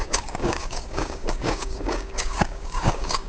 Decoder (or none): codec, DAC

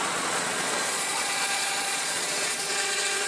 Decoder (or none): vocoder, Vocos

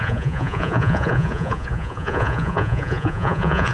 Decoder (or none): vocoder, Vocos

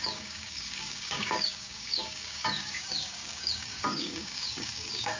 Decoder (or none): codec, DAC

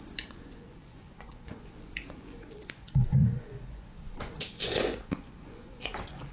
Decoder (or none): vocoder, Vocos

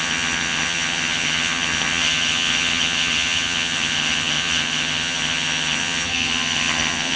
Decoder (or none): vocoder, HiFi-GAN